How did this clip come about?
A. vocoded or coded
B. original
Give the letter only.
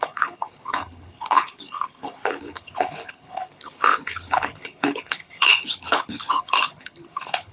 A